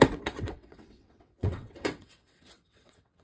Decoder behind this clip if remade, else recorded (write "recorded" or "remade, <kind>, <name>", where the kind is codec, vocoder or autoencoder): remade, vocoder, WaveNeXt